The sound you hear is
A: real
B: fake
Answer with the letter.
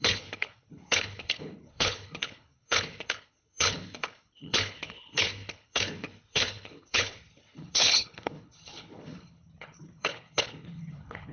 B